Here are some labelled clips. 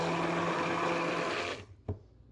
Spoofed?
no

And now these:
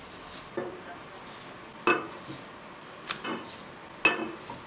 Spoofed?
no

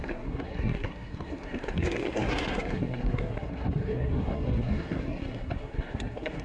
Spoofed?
yes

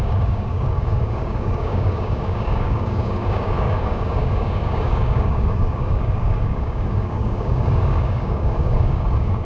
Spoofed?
yes